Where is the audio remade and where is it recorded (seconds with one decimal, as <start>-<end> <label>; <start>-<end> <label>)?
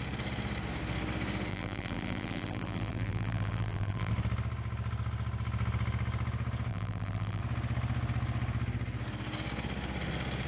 0.0-1.5 recorded; 1.5-4.1 remade; 4.1-6.7 recorded; 6.7-7.4 remade; 7.4-10.5 recorded